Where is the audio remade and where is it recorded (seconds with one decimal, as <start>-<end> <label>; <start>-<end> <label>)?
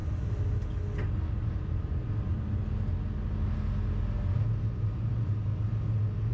0.0-1.4 recorded; 1.4-2.0 remade; 2.0-4.6 recorded; 4.6-5.5 remade; 5.5-6.3 recorded